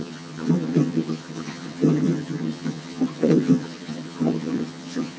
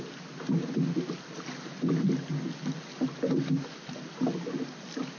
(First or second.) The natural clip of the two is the second